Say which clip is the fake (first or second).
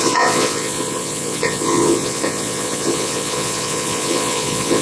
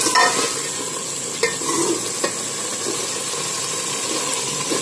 first